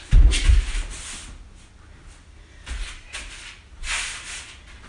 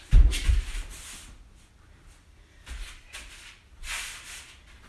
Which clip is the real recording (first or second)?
first